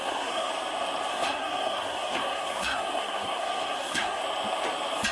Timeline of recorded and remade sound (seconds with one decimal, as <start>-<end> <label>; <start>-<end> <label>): 0.0-0.5 remade; 0.5-1.1 recorded; 1.1-4.2 remade; 4.2-5.1 recorded